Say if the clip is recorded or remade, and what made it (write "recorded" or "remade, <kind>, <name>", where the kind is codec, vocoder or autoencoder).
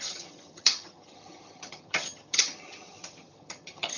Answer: remade, vocoder, HiFi-GAN